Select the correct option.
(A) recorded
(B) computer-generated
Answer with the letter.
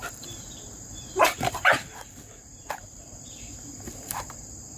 B